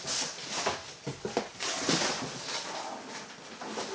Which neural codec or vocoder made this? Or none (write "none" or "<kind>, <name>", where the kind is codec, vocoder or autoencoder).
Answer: none